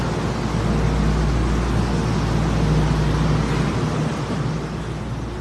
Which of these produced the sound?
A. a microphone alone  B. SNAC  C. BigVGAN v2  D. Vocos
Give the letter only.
A